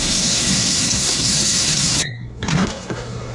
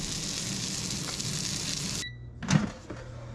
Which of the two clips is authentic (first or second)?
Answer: second